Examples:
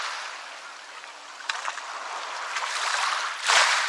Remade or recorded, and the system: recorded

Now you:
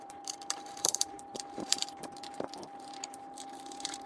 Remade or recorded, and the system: remade, vocoder, BigVGAN v2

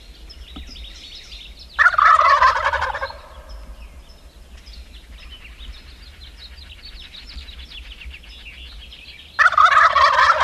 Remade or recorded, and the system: recorded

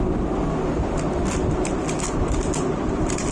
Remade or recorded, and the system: recorded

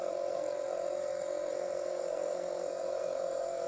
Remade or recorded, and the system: remade, codec, SNAC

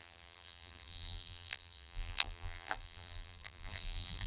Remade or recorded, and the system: remade, vocoder, BigVGAN v2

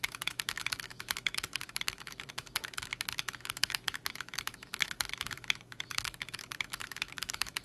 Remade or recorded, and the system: remade, autoencoder, DAC-VAE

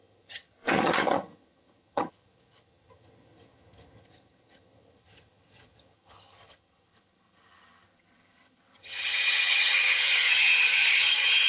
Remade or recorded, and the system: remade, vocoder, HiFi-GAN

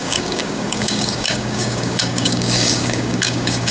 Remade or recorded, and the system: remade, codec, DAC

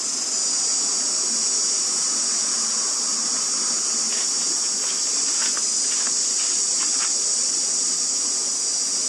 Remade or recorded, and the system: recorded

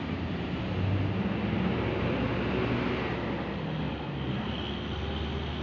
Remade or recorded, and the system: recorded